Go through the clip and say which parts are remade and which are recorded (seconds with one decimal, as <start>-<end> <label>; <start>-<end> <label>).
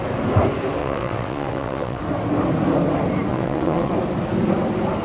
0.0-0.8 recorded; 0.8-2.0 remade; 2.0-3.3 recorded; 3.3-3.9 remade; 3.9-5.0 recorded